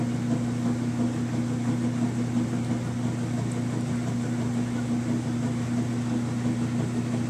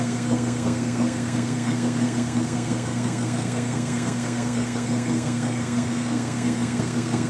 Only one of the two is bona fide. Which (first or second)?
first